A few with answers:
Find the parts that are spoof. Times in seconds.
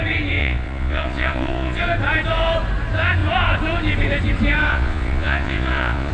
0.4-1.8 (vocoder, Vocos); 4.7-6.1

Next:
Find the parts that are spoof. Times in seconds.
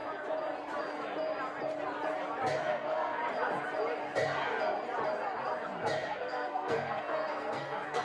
2.6-3.2 (codec, SNAC); 6.1-8.0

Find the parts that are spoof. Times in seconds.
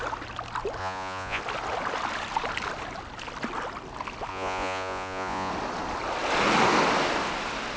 0.8-1.4 (vocoder, Vocos); 4.3-5.5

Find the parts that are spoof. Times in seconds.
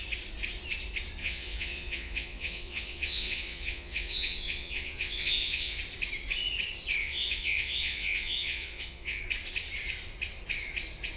1.2-5.8 (vocoder, Vocos); 7.0-9.2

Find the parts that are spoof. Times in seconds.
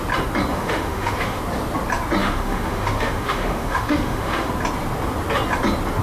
0.5-1.4 (autoencoder, DAC-VAE); 2.2-4.5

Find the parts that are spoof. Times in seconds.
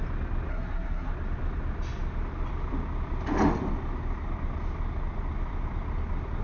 0.5-1.1 (codec, SNAC)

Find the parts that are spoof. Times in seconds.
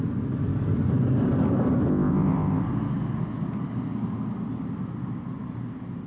1.9-2.6 (codec, ZipCodec)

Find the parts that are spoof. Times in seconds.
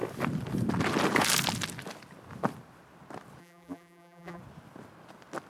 3.4-4.4 (vocoder, BigVGAN v2)